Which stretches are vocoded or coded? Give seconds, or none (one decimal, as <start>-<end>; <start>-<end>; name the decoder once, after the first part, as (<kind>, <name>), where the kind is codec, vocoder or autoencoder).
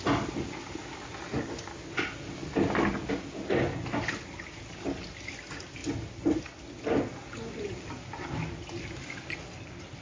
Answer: none